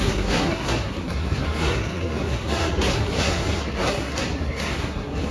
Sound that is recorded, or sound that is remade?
remade